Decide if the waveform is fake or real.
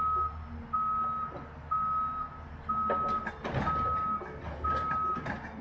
real